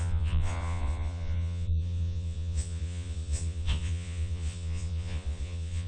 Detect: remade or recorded remade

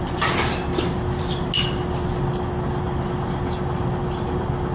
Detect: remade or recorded recorded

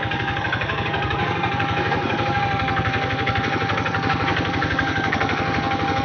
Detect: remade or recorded remade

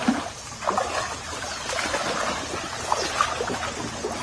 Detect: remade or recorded recorded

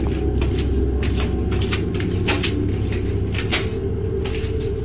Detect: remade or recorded recorded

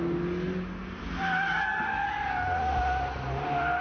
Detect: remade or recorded recorded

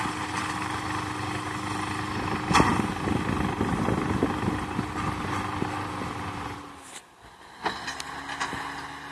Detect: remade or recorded recorded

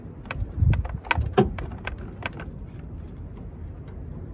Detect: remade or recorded recorded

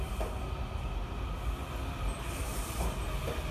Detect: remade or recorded recorded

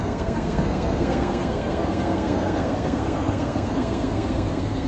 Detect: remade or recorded remade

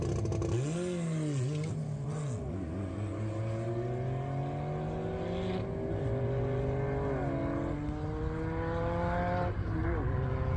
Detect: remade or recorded recorded